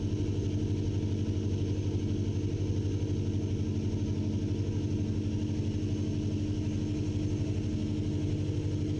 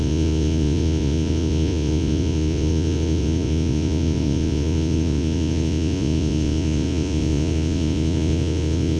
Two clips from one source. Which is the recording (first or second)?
first